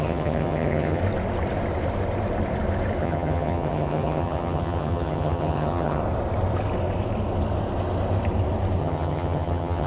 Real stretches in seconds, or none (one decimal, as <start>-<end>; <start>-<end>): 1.0-3.0; 6.0-8.8